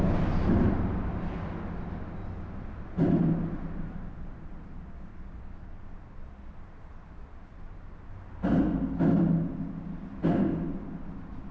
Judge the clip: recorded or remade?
recorded